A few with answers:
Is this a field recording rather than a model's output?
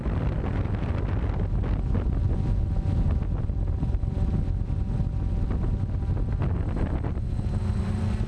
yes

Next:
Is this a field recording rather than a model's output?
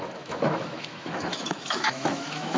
no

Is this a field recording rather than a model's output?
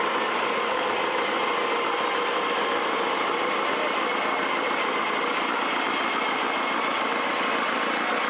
yes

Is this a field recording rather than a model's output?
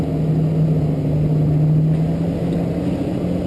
yes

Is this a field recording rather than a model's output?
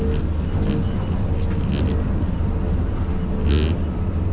yes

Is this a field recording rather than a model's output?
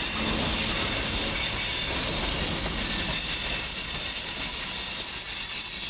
yes